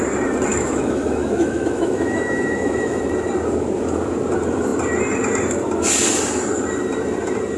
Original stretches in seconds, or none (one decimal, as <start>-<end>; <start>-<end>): 0.0-0.5; 3.0-7.6